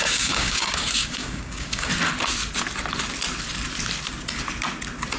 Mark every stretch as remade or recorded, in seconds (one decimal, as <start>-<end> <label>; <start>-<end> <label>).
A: 0.0-1.9 remade; 1.9-5.2 recorded